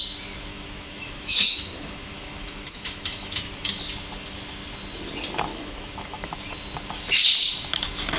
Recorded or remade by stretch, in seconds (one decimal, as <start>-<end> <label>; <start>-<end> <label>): 0.0-0.5 recorded; 0.5-3.8 remade; 3.8-5.5 recorded; 5.5-6.3 remade; 6.3-8.2 recorded